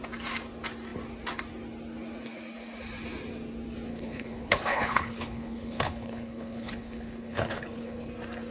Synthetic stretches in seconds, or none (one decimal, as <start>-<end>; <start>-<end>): 3.9-8.1